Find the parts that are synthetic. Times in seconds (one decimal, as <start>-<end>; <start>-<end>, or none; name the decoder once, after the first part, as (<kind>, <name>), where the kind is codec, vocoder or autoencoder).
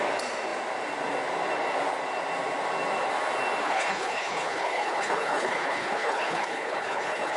3.6-7.4 (codec, HILCodec)